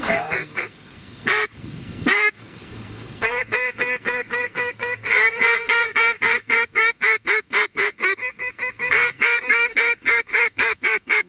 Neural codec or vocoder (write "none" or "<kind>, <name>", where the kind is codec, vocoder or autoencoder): codec, SNAC